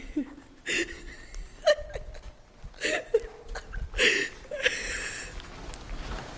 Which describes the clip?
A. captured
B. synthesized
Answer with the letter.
A